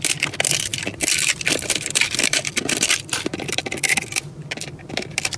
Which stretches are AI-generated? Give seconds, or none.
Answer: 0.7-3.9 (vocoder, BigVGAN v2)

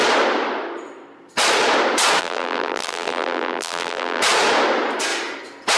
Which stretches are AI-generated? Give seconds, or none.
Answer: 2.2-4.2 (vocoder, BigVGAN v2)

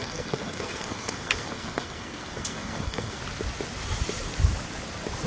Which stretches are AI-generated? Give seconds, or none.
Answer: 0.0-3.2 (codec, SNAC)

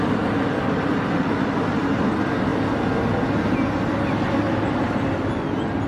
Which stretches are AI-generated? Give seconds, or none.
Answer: none

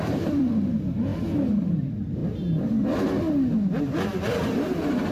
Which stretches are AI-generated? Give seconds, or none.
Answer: 0.0-1.1 (vocoder, BigVGAN v2); 1.7-2.2; 3.8-5.1

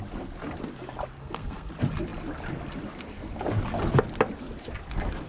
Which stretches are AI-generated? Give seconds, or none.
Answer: 1.2-1.7 (codec, SNAC)